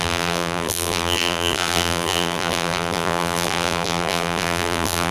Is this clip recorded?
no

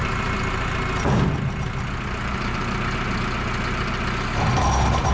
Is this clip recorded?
yes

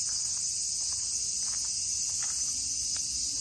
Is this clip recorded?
yes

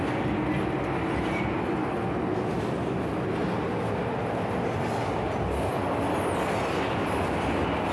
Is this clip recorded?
yes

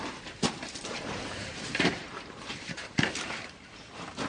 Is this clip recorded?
no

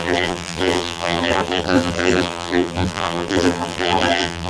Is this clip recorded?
no